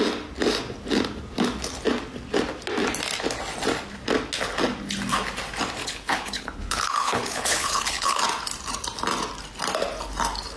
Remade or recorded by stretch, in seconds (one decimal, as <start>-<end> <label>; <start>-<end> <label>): 0.0-5.8 recorded; 5.8-8.2 remade; 8.2-10.6 recorded